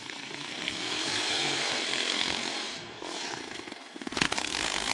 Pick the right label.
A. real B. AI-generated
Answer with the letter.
B